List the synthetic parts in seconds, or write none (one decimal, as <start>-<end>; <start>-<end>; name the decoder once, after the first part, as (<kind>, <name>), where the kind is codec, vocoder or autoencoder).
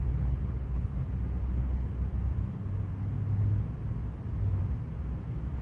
0.0-0.9 (codec, HILCodec); 1.5-1.9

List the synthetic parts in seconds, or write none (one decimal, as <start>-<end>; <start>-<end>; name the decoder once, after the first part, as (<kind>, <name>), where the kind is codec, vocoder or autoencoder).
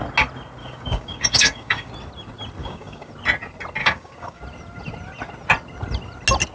0.6-1.9 (codec, DAC); 2.6-3.1; 3.8-4.4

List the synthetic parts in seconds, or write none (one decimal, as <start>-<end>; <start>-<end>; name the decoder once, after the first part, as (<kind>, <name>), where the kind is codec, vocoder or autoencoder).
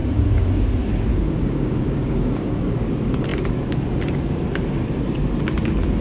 0.0-0.7 (codec, DAC); 1.1-2.9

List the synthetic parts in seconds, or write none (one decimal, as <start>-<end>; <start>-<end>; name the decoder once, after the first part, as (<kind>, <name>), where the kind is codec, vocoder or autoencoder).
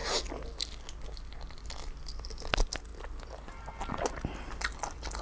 none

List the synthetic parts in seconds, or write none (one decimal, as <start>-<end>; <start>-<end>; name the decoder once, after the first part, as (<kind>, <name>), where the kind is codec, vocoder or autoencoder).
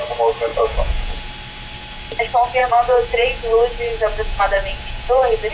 0.5-1.3 (vocoder, Vocos); 2.6-5.5